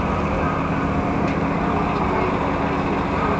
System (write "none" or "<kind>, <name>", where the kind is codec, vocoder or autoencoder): none